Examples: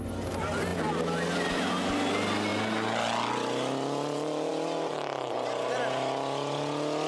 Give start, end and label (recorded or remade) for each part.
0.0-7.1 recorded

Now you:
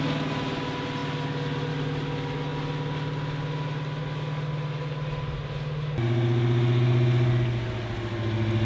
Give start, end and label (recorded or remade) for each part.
0.0-8.6 recorded

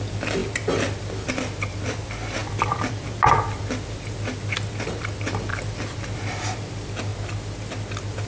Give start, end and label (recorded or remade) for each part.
0.0-2.4 recorded; 2.4-3.2 remade; 3.2-5.5 recorded; 5.5-6.4 remade; 6.4-8.3 recorded

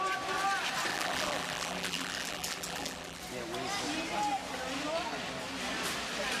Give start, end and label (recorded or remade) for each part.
0.0-0.9 recorded; 0.9-3.2 remade; 3.2-6.4 recorded

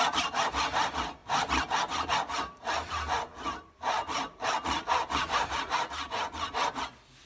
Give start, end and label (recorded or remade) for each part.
0.0-3.3 recorded; 3.3-4.5 remade; 4.5-7.3 recorded